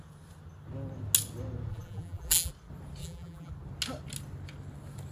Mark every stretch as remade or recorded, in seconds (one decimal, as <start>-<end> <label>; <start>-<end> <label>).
0.0-1.7 recorded; 1.7-2.5 remade; 2.5-3.0 recorded; 3.0-3.5 remade; 3.5-5.1 recorded